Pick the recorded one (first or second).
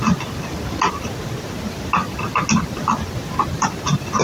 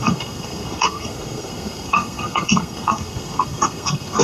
first